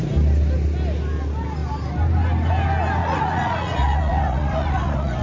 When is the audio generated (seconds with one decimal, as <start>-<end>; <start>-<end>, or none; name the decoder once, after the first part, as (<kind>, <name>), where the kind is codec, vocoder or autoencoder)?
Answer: 3.0-5.2 (vocoder, Vocos)